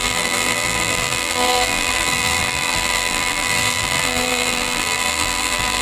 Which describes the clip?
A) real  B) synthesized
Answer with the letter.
B